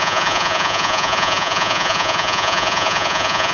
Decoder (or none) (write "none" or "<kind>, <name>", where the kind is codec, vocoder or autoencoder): vocoder, Vocos